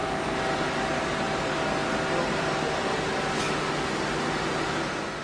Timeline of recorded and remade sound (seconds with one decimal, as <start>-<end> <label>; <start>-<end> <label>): 0.0-5.2 recorded